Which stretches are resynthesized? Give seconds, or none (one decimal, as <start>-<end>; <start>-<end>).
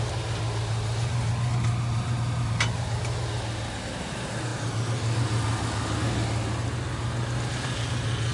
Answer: none